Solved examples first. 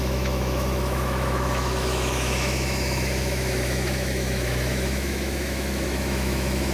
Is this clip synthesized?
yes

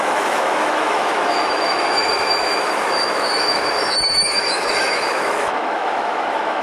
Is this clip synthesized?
yes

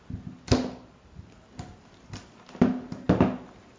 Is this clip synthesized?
no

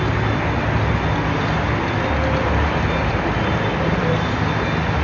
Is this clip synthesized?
no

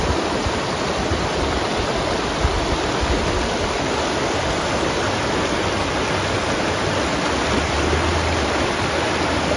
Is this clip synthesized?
no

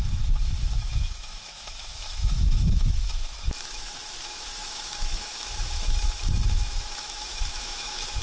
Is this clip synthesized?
yes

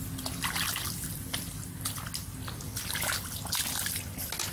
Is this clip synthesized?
no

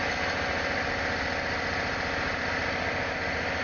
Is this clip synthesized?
no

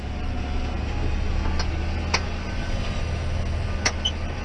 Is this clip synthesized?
no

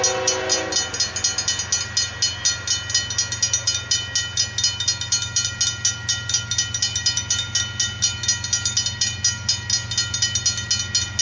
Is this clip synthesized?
no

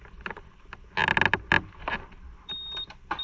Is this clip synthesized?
no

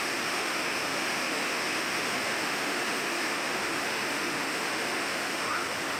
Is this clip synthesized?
yes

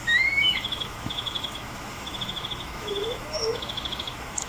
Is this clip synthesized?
yes